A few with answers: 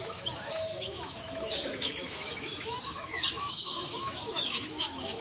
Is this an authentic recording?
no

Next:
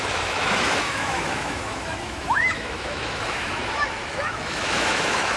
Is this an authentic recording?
no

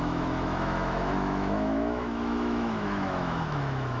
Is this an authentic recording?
no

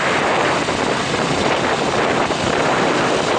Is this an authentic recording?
yes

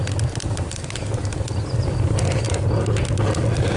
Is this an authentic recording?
yes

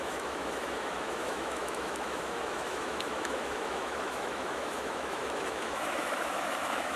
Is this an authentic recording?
no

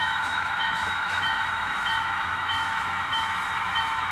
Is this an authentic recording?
no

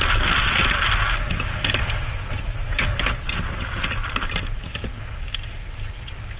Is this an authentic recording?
yes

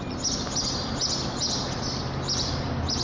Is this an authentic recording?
yes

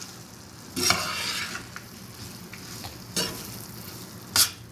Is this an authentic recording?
yes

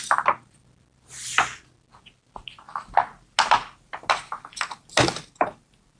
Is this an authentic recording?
yes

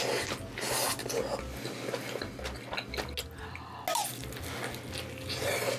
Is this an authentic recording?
yes